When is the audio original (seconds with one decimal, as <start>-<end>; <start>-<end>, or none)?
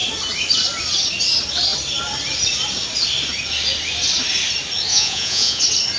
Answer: 0.0-4.9; 5.6-6.0